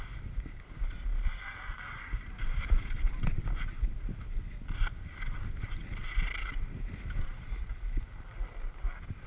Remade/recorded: recorded